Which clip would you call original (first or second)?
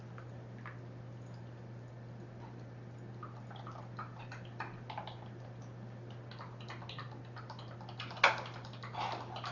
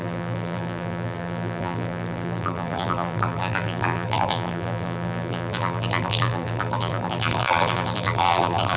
first